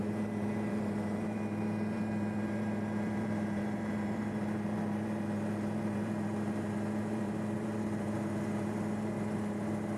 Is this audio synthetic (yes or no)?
yes